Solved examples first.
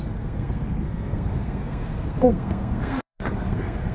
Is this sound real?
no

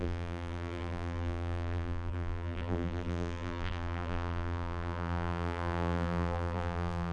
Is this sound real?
no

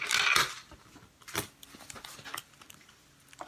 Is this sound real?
yes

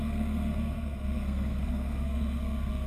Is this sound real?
no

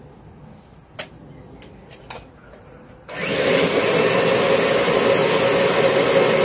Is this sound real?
yes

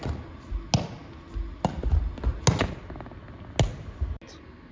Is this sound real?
yes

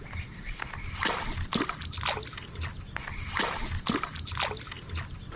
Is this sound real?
yes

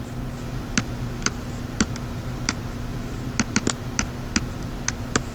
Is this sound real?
yes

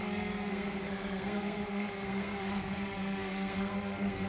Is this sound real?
no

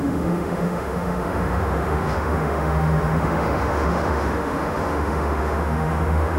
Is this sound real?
no